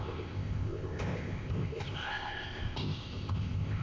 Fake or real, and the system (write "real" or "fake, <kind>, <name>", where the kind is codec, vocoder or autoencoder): fake, codec, ZipCodec